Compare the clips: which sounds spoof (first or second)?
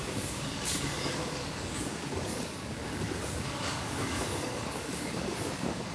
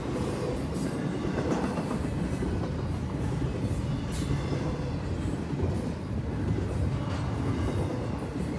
first